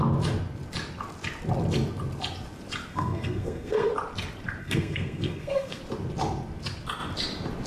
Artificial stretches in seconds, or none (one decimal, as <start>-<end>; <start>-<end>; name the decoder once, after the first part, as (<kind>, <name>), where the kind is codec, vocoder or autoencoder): 2.9-3.9 (codec, SNAC); 4.6-5.8